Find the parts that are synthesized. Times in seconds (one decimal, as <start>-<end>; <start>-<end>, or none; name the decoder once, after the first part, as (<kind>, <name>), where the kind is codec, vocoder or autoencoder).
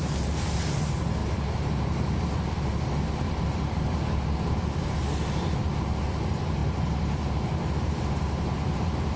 none